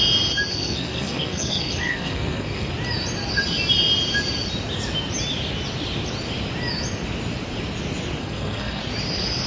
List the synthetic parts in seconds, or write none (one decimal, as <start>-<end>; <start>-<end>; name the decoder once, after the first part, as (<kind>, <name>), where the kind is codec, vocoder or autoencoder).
0.5-2.7 (codec, SNAC); 8.2-8.8